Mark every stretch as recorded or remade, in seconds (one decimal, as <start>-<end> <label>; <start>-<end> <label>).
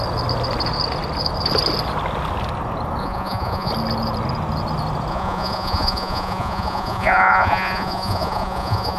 0.0-3.0 recorded; 3.0-3.7 remade; 3.7-5.1 recorded; 5.1-9.0 remade